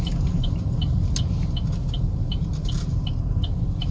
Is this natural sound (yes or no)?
yes